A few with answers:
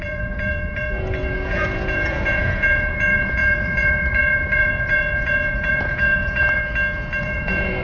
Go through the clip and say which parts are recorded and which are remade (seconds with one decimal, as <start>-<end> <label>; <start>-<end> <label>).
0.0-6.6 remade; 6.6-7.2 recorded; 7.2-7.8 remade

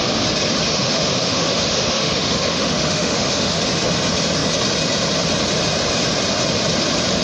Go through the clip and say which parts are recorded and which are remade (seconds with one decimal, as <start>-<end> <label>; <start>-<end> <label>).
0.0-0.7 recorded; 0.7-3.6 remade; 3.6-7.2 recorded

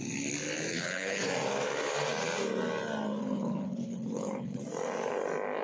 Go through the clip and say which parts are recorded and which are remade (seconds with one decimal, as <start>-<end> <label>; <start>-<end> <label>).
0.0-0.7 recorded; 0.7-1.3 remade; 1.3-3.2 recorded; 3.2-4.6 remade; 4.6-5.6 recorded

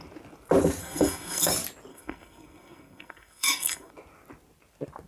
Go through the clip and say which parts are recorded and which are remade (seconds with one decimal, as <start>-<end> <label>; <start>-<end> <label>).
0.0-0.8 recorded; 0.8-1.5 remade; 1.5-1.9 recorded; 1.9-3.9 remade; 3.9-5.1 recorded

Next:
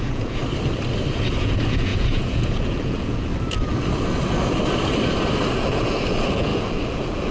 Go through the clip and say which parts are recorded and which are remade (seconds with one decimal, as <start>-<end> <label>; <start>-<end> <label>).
0.0-0.4 remade; 0.4-1.1 recorded; 1.1-3.3 remade; 3.3-5.5 recorded; 5.5-7.3 remade

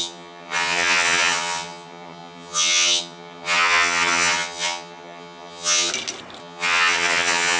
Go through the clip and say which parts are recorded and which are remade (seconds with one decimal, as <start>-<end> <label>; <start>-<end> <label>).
0.0-5.9 remade; 5.9-6.4 recorded; 6.4-7.6 remade